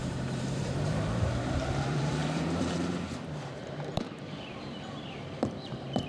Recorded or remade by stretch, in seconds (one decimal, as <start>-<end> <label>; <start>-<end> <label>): 0.0-6.1 remade